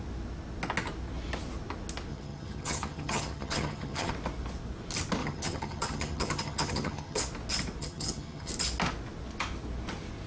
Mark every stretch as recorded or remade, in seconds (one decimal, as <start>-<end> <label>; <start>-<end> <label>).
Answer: 0.0-2.1 recorded; 2.1-4.1 remade; 4.1-5.2 recorded; 5.2-7.2 remade; 7.2-7.8 recorded; 7.8-8.5 remade; 8.5-10.3 recorded